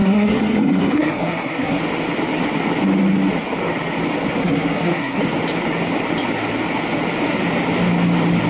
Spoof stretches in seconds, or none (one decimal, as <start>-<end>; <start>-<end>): 0.0-1.8; 4.4-5.2

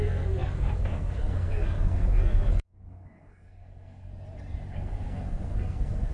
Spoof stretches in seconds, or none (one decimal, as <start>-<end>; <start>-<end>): 0.0-4.1; 4.7-6.1

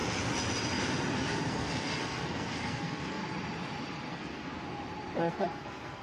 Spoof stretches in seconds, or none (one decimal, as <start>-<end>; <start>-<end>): 1.5-3.2; 4.1-4.5; 5.2-6.0

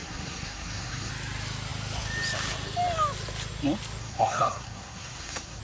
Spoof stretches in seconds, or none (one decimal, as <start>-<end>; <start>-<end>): 0.0-1.1; 4.0-5.6

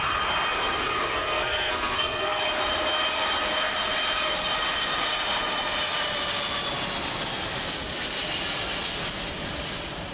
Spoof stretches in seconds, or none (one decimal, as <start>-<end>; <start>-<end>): 1.1-2.4

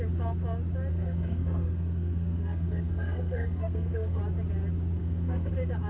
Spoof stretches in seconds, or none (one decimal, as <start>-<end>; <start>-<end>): 0.9-4.2; 5.0-5.5

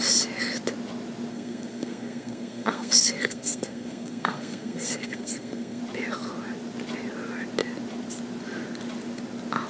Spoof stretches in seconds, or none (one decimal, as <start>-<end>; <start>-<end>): 1.3-5.8

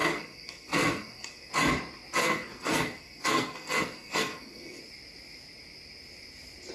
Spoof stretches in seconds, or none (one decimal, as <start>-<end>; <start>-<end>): 0.0-1.5; 2.2-4.8